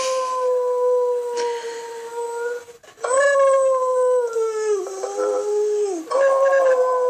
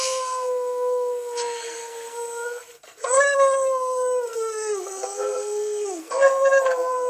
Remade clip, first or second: second